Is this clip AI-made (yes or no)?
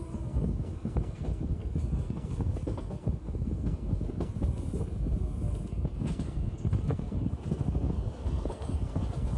yes